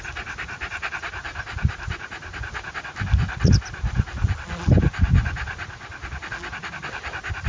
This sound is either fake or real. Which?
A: real